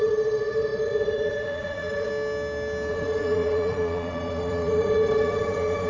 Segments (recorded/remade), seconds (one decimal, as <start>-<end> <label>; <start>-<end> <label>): 0.0-2.1 remade; 2.1-2.9 recorded; 2.9-5.9 remade